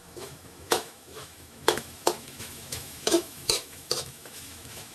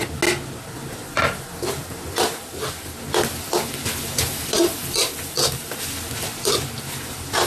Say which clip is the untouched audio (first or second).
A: second